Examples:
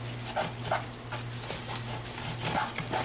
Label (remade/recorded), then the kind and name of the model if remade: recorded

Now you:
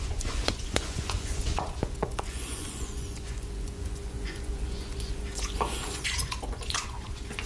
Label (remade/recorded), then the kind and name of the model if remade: remade, vocoder, Vocos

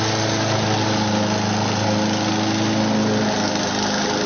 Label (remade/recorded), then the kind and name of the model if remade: recorded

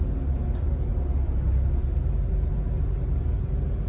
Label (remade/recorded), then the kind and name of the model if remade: recorded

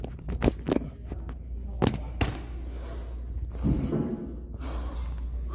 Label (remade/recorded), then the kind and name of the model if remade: recorded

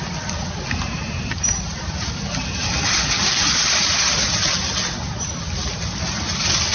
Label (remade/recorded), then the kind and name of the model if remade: recorded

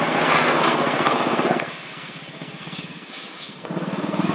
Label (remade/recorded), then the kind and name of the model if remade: remade, codec, SNAC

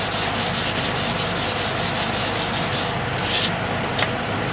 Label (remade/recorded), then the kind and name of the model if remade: recorded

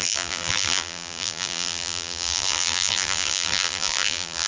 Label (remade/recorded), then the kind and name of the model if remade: remade, vocoder, BigVGAN v2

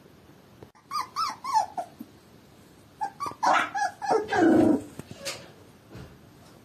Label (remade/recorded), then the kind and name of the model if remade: recorded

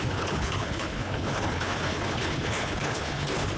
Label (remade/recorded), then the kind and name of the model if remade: remade, codec, HILCodec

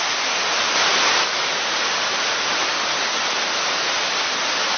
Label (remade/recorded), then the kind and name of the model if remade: recorded